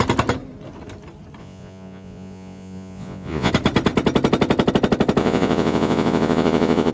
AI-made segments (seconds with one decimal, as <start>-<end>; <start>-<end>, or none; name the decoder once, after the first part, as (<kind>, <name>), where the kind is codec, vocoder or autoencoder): 1.4-3.5 (vocoder, Vocos); 5.2-6.9